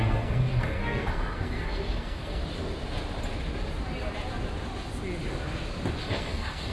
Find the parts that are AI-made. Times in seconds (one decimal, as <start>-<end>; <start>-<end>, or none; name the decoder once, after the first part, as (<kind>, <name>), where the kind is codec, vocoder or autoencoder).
0.0-2.4 (codec, SNAC); 6.0-6.7